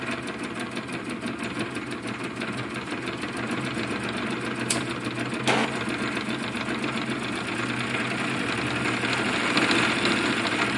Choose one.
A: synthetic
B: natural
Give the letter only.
B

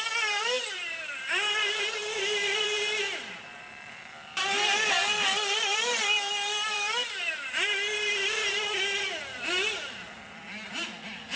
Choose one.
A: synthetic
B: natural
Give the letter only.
A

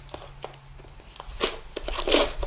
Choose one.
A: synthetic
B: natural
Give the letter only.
B